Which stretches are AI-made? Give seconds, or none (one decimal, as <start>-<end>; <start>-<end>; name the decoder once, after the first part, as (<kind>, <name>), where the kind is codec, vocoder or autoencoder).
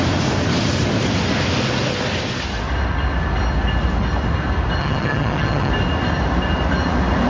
4.8-5.7 (vocoder, HiFi-GAN)